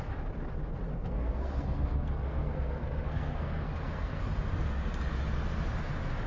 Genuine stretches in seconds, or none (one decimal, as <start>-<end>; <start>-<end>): 0.0-0.9; 4.2-6.3